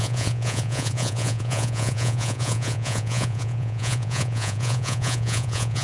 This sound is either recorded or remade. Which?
remade